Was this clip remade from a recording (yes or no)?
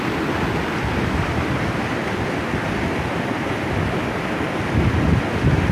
no